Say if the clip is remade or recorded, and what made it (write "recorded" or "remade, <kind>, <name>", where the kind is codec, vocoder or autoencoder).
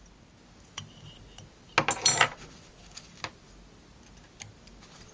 recorded